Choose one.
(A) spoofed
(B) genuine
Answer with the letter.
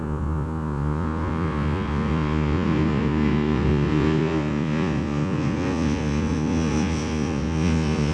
A